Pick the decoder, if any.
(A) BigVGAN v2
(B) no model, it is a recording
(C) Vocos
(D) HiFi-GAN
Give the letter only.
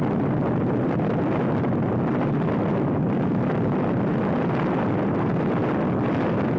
B